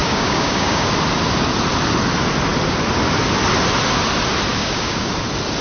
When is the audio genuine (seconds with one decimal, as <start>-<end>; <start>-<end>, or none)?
0.9-4.5; 5.1-5.6